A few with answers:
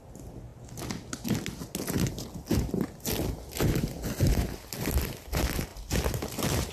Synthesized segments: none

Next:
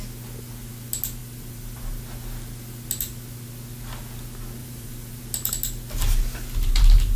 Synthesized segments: 1.2-2.0 (vocoder, BigVGAN v2); 4.6-5.2